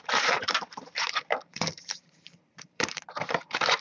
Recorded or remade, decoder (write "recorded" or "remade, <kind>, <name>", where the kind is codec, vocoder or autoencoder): remade, vocoder, BigVGAN v2